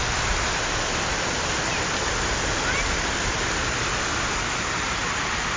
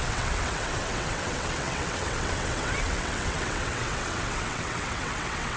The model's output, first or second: second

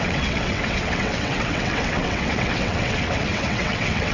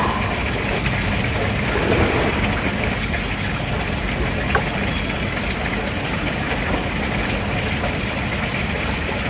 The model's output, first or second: first